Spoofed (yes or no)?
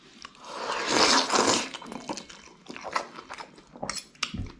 no